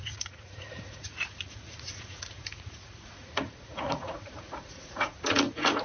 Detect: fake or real fake